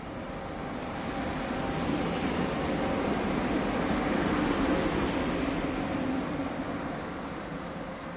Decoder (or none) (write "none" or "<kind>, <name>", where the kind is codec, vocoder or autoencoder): none